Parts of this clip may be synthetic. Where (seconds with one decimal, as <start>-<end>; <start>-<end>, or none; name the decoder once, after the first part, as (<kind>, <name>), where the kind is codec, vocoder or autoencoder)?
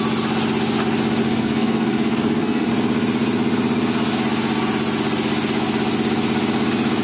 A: 1.2-2.7 (codec, SNAC)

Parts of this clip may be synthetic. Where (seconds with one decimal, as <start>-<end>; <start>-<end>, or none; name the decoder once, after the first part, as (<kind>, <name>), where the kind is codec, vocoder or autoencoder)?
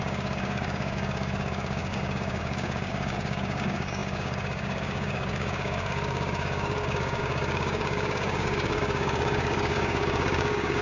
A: 0.0-10.8 (codec, DAC)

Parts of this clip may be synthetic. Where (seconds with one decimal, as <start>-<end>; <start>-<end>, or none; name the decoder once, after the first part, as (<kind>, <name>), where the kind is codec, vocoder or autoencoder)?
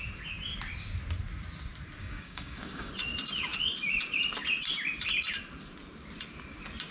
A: 2.0-2.9 (codec, DAC)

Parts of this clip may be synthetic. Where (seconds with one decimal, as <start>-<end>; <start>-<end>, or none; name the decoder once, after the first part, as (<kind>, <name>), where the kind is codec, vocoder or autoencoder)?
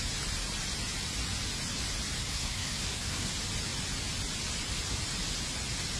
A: 2.3-3.3 (codec, SNAC)